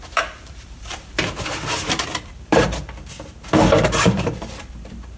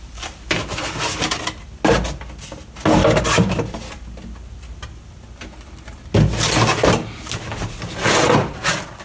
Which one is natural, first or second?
second